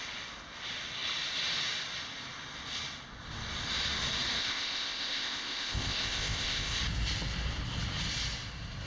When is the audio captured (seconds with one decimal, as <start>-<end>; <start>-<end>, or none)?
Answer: 0.0-4.4; 6.8-8.9